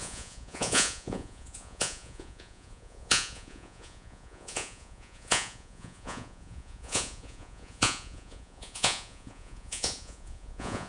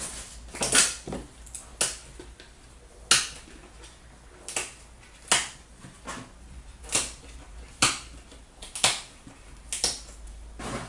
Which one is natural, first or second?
second